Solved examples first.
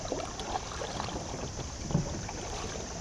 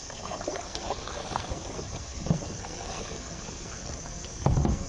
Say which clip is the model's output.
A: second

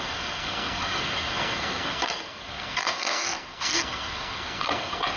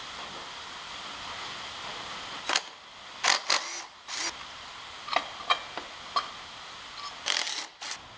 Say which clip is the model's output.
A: first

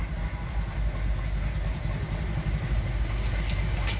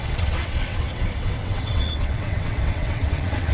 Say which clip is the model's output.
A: second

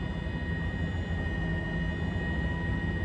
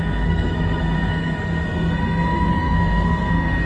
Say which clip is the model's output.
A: second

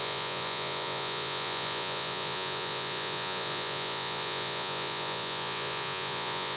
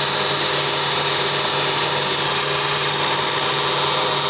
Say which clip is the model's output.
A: first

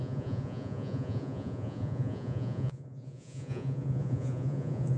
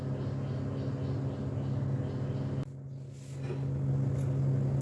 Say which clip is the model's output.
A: first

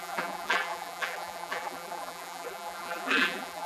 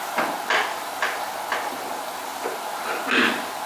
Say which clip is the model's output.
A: first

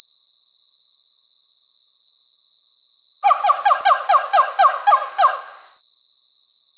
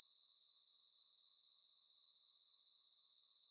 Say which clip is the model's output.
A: second